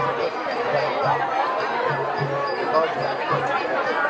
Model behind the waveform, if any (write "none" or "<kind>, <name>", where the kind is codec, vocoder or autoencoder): none